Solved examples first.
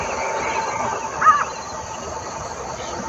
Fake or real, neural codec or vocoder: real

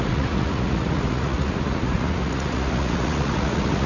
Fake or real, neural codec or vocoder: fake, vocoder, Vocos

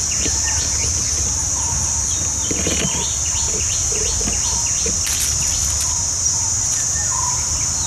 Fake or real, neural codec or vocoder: real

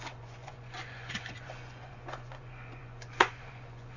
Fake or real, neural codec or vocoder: fake, vocoder, Vocos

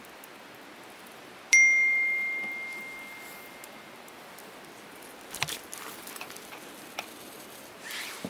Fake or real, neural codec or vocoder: real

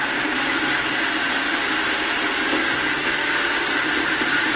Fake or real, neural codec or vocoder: real